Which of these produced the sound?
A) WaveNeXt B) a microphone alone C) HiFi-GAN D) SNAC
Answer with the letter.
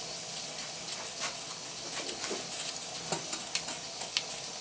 B